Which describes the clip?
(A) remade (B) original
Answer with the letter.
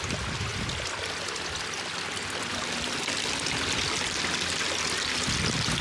B